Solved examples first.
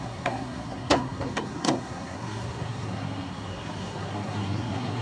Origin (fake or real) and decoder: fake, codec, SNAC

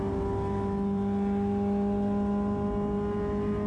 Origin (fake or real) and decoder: real